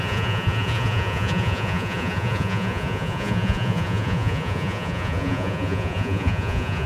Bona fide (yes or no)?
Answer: no